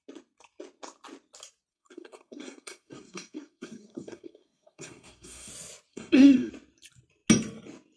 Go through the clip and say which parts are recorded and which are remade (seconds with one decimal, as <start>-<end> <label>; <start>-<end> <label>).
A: 0.0-1.7 recorded; 1.7-5.5 remade; 5.5-5.9 recorded; 5.9-6.5 remade; 6.5-8.0 recorded

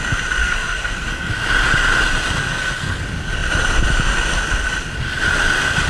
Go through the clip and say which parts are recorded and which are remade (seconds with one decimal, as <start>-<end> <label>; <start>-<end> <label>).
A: 0.0-0.4 recorded; 0.4-1.3 remade; 1.3-2.4 recorded; 2.4-3.0 remade; 3.0-5.9 recorded

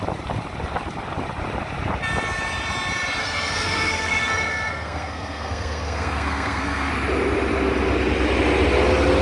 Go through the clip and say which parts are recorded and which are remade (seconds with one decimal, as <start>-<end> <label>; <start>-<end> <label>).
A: 0.0-3.2 recorded; 3.2-6.9 remade; 6.9-9.2 recorded

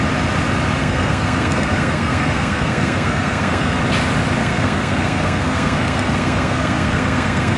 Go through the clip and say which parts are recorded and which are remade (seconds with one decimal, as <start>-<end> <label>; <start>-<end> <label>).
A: 0.0-0.8 recorded; 0.8-3.8 remade; 3.8-4.4 recorded; 4.4-7.6 remade